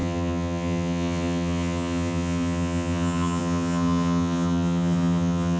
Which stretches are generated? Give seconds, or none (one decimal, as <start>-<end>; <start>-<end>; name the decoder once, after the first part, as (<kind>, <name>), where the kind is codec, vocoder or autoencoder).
0.0-5.6 (vocoder, HiFi-GAN)